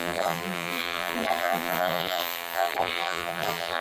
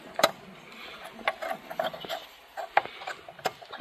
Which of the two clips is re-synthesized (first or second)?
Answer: first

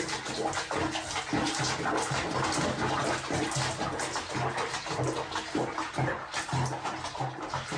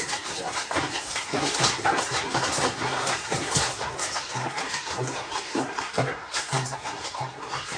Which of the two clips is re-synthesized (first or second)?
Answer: second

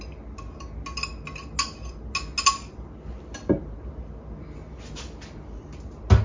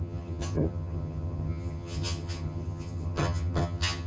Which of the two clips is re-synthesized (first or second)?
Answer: second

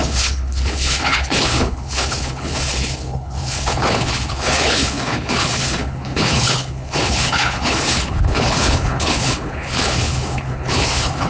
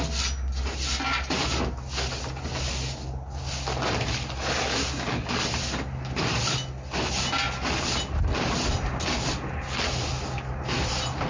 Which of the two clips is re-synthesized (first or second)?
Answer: first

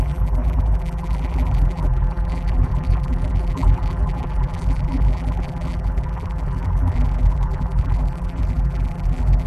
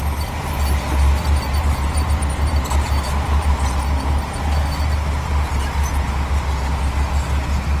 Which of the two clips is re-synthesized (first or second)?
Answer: first